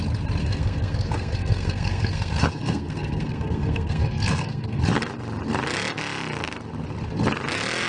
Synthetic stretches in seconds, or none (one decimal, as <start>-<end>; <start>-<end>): 0.4-4.8